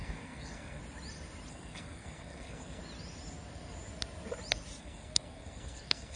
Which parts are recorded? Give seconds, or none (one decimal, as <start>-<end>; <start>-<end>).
0.8-1.5; 2.8-4.8